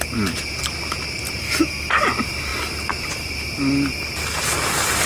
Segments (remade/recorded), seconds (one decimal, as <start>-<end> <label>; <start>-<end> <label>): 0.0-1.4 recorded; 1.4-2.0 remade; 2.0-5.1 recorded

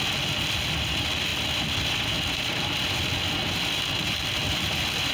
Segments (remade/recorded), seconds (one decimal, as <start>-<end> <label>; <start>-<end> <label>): 0.0-1.3 recorded; 1.3-2.9 remade; 2.9-4.4 recorded; 4.4-5.1 remade

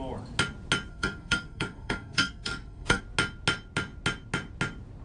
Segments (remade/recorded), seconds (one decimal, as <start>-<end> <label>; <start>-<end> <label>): 0.0-0.9 recorded; 0.9-3.0 remade; 3.0-5.0 recorded

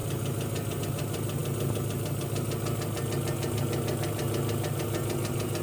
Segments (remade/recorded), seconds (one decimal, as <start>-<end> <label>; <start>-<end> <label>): 0.0-5.6 recorded